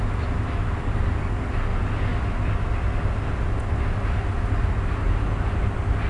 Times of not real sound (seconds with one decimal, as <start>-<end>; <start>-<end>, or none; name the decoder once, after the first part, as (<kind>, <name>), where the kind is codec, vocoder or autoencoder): none